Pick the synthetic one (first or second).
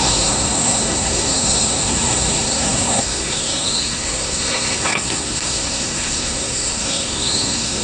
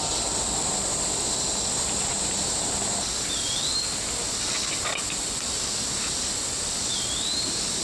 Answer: first